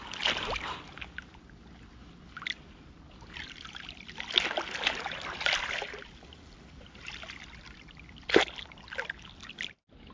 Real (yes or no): yes